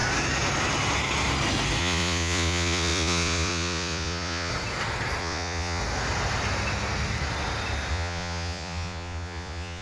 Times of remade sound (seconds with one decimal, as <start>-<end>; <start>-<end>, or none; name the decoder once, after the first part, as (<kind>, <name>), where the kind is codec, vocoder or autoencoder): 1.8-4.5 (vocoder, Vocos); 5.2-5.8; 7.9-9.8